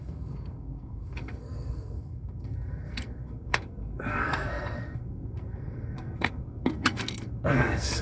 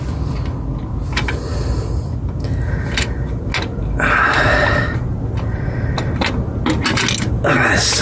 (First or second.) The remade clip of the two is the first